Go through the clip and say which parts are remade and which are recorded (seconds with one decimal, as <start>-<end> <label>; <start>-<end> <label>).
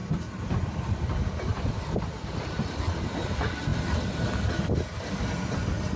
0.0-0.5 remade; 0.5-1.5 recorded; 1.5-2.5 remade; 2.5-6.0 recorded